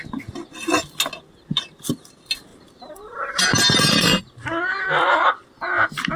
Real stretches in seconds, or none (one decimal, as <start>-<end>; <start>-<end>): 0.0-2.5; 4.2-6.2